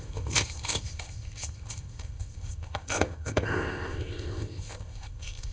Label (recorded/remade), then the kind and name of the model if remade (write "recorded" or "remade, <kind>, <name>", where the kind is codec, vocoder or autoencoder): remade, codec, ZipCodec